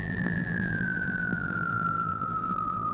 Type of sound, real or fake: fake